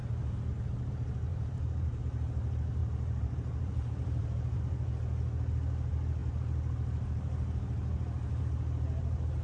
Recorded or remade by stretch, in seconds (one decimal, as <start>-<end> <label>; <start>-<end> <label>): 0.0-1.3 recorded; 1.3-2.0 remade; 2.0-2.8 recorded; 2.8-4.6 remade; 4.6-9.4 recorded